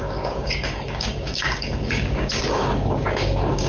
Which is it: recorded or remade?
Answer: remade